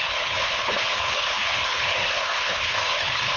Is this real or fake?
fake